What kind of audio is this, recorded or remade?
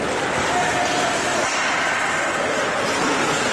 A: recorded